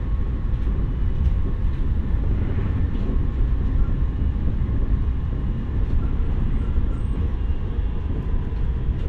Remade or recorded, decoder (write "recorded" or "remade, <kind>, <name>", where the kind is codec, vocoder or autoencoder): recorded